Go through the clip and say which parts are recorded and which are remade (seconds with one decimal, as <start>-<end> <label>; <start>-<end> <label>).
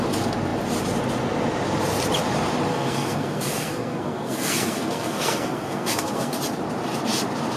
0.0-2.7 recorded; 2.7-6.4 remade; 6.4-7.6 recorded